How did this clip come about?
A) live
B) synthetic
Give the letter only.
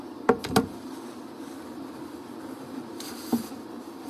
A